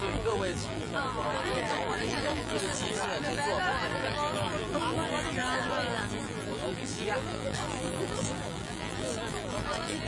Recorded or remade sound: remade